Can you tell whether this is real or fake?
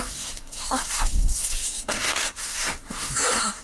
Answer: fake